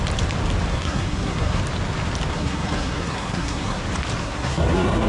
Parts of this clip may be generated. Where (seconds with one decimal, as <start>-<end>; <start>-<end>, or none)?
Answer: 0.7-1.6; 2.3-3.8; 4.2-5.1